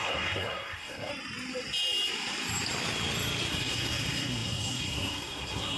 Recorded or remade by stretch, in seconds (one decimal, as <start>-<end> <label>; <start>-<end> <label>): 0.0-1.1 remade; 1.1-3.5 recorded; 3.5-5.8 remade